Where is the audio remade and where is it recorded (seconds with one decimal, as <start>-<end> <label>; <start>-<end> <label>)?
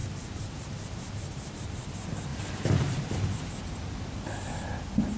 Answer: 0.0-1.9 remade; 1.9-2.3 recorded; 2.3-3.5 remade; 3.5-5.2 recorded